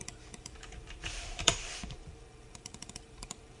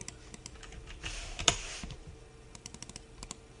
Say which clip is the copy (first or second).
first